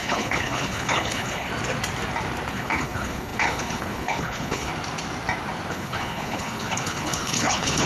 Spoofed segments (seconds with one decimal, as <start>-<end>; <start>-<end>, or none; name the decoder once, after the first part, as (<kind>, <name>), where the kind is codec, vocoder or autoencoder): 0.0-1.5 (codec, HILCodec); 2.5-4.7; 5.7-7.9